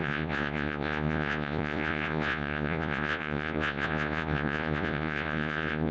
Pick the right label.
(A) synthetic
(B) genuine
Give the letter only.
A